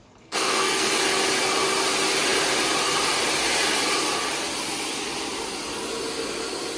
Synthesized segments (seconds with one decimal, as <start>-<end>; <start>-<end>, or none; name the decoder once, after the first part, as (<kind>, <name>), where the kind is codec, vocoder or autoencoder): 0.0-0.9 (codec, SNAC)